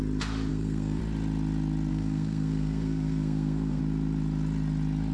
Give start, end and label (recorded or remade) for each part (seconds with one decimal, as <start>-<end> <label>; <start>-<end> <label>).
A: 0.0-0.5 recorded; 0.5-1.0 remade; 1.0-1.9 recorded; 1.9-3.8 remade; 3.8-5.1 recorded